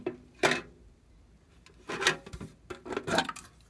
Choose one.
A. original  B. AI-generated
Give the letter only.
A